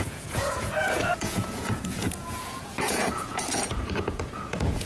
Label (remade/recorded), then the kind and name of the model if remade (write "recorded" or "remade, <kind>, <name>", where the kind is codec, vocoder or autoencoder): remade, vocoder, Vocos